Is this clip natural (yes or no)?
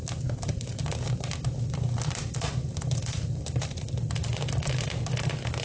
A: yes